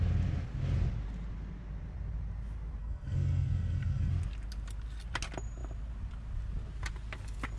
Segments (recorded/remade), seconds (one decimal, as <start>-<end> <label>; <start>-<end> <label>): 0.0-2.8 recorded; 2.8-4.1 remade; 4.1-7.6 recorded